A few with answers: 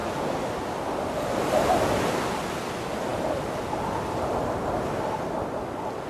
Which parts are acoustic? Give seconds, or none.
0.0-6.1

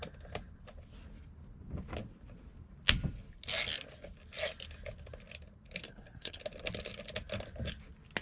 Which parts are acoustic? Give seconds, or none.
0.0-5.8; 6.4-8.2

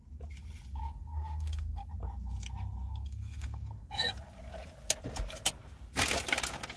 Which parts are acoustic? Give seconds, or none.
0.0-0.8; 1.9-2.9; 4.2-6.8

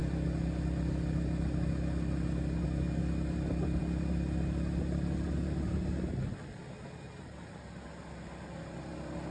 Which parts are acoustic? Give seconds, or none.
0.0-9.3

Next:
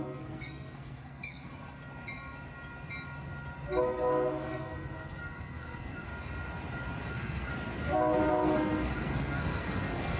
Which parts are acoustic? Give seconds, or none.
1.5-3.8; 6.1-7.1; 7.5-8.3

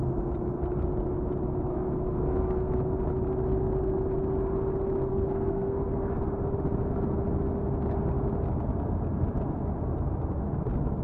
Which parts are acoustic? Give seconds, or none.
0.0-1.7; 3.1-5.1; 5.9-11.0